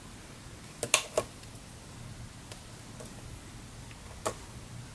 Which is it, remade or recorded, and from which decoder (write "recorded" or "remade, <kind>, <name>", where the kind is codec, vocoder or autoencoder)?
recorded